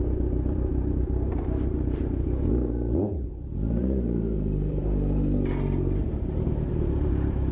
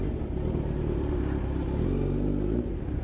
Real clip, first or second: second